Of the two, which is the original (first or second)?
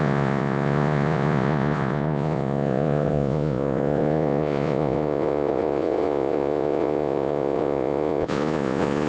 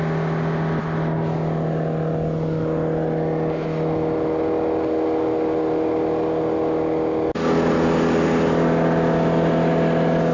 second